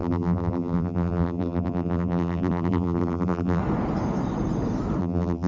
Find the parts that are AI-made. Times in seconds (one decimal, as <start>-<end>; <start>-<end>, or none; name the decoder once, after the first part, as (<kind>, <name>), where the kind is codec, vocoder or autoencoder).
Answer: 0.0-3.6 (vocoder, BigVGAN v2); 5.0-5.5